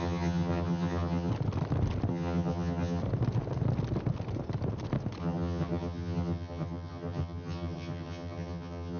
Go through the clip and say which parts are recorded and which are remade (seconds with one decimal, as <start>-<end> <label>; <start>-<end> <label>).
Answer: 0.0-1.3 remade; 1.3-2.1 recorded; 2.1-3.0 remade; 3.0-5.2 recorded; 5.2-9.0 remade